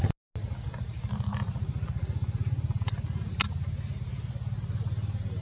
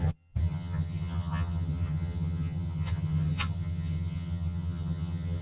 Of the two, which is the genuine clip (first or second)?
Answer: first